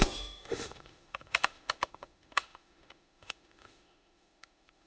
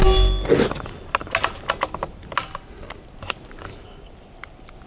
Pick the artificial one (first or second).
first